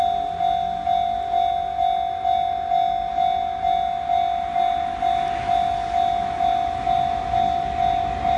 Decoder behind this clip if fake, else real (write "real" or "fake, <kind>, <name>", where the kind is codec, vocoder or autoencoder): real